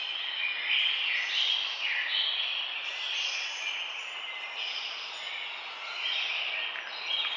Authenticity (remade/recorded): recorded